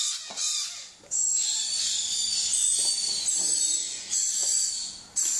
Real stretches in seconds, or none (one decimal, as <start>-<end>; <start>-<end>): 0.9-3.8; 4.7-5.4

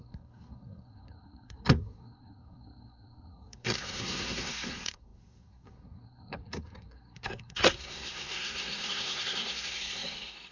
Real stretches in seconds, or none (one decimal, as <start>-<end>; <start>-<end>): none

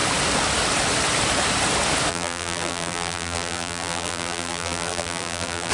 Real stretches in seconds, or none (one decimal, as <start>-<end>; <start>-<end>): 0.0-2.1

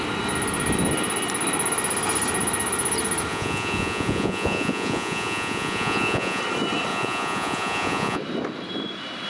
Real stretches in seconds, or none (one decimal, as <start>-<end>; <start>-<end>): 0.0-3.3; 6.4-6.9; 8.2-9.3

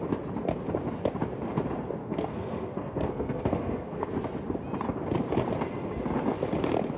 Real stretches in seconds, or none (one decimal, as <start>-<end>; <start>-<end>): 0.0-2.0; 4.1-7.0